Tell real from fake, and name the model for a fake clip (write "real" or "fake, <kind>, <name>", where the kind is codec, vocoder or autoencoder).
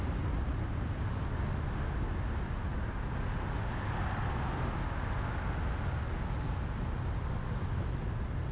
real